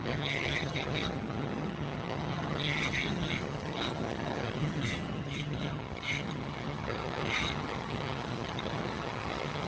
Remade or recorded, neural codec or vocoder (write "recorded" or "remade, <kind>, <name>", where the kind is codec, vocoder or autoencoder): remade, vocoder, HiFi-GAN